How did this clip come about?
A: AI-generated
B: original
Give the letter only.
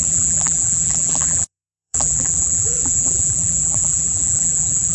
A